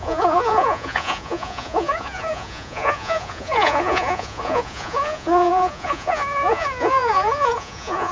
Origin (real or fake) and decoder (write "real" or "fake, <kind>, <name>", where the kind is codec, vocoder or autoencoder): fake, vocoder, Vocos